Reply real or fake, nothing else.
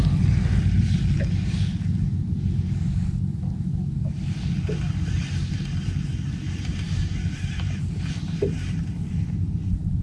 real